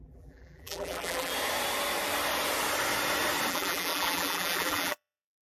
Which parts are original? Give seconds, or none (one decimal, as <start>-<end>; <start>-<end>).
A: 1.3-3.5